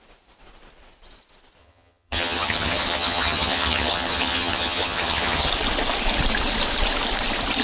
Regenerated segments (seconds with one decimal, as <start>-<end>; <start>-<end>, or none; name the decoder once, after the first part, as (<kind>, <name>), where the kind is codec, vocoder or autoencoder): 1.6-5.5 (vocoder, HiFi-GAN)